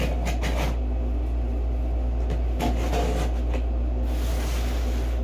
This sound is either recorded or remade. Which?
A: recorded